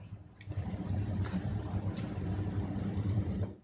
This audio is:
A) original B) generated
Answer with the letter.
B